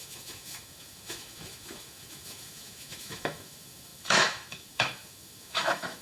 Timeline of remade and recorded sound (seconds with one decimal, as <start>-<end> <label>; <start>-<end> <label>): 0.0-6.0 remade